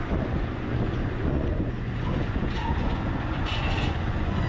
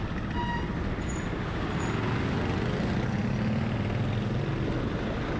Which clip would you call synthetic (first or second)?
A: first